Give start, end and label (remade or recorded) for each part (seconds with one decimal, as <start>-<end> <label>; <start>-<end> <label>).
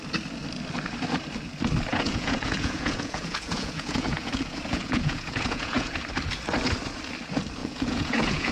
0.0-1.9 recorded; 1.9-6.0 remade; 6.0-7.6 recorded; 7.6-8.5 remade